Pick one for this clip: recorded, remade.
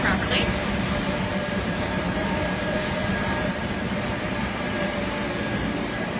remade